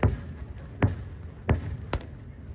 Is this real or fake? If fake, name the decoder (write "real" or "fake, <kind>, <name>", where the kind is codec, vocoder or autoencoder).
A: real